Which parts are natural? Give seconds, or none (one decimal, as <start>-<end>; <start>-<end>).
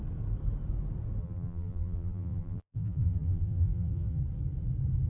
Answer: 0.0-1.2; 4.2-5.1